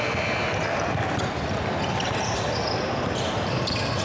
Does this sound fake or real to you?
fake